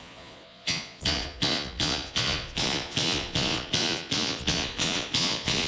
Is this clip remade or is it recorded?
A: remade